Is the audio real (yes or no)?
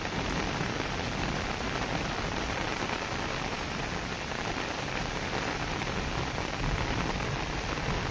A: yes